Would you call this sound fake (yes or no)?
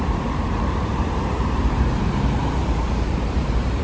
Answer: yes